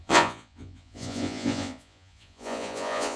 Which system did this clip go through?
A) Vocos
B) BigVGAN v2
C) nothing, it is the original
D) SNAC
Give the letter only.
A